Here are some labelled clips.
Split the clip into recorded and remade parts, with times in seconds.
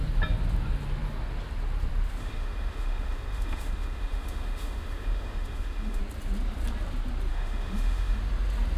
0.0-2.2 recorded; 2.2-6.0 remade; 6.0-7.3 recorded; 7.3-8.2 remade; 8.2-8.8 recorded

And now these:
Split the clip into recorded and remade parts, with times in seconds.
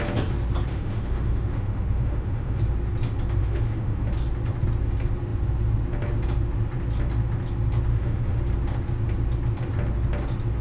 0.0-0.7 recorded; 0.7-2.6 remade; 2.6-3.4 recorded; 3.4-4.1 remade; 4.1-7.9 recorded; 7.9-8.4 remade; 8.4-10.6 recorded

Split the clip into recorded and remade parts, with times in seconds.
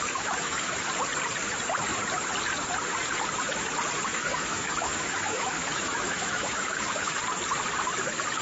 0.0-0.9 remade; 0.9-4.1 recorded; 4.1-7.2 remade; 7.2-8.4 recorded